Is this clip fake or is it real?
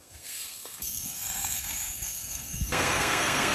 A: fake